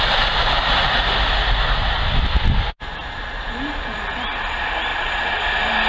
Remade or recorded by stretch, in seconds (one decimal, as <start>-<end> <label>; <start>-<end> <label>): 0.0-4.9 recorded; 4.9-5.5 remade; 5.5-5.9 recorded

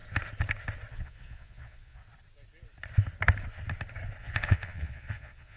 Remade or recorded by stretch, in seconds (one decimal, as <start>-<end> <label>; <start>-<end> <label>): 0.0-0.9 recorded; 0.9-2.0 remade; 2.0-4.2 recorded; 4.2-5.6 remade